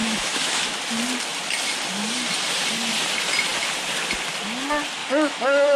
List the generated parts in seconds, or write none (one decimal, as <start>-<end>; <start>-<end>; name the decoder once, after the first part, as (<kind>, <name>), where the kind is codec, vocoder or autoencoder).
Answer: 0.0-0.8 (autoencoder, DAC-VAE); 5.0-5.8

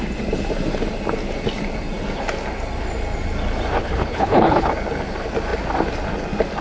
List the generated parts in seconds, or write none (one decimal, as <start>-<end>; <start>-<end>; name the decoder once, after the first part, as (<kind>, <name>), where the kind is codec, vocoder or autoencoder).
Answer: 3.8-4.7 (codec, HILCodec)

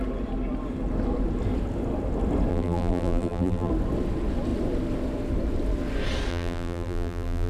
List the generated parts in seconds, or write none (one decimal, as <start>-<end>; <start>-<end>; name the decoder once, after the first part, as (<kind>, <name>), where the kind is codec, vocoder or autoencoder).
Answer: 2.5-3.7 (vocoder, BigVGAN v2); 6.3-7.5

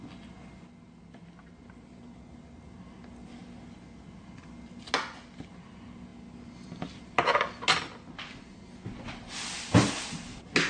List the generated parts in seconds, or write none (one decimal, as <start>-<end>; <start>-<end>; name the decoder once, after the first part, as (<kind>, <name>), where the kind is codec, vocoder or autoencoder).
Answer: none

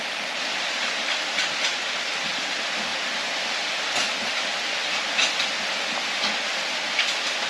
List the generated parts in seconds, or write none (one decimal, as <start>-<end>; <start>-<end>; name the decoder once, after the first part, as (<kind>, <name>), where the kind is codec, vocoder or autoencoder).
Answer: none

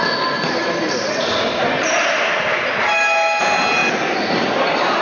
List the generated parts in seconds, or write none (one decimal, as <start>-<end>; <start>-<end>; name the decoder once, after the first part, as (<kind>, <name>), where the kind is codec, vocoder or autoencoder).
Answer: 0.6-3.4 (vocoder, BigVGAN v2)